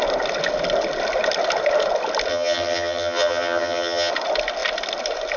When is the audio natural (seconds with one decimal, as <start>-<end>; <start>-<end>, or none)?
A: 0.0-2.3; 4.1-5.4